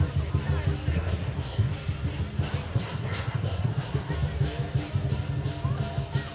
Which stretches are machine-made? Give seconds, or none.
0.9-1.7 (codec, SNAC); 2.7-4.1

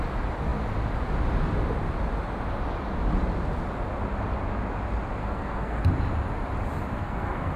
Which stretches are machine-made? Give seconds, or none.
5.2-5.8 (codec, SNAC); 6.9-7.6